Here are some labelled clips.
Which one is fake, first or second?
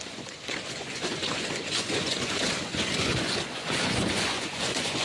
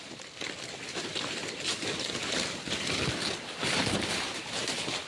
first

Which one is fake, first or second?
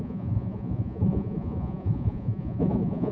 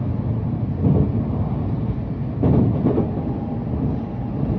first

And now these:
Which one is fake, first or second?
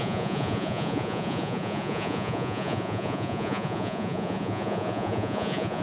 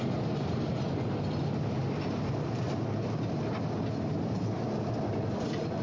first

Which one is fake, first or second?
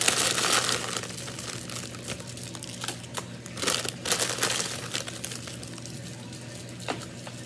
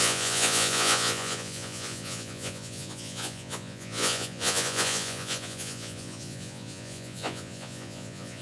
second